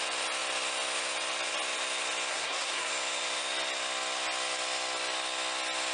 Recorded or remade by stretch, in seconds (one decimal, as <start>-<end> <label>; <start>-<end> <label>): 0.0-2.3 recorded; 2.3-2.9 remade; 2.9-5.9 recorded